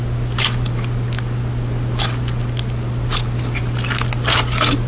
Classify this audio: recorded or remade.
recorded